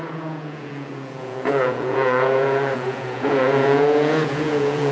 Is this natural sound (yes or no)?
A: no